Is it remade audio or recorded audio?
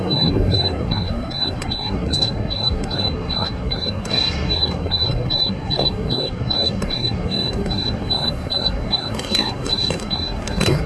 remade